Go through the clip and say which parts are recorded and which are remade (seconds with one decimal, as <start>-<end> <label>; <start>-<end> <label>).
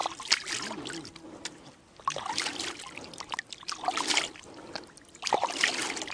0.0-6.1 recorded